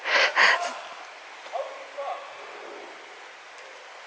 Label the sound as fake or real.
real